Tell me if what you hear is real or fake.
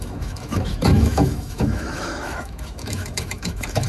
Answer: fake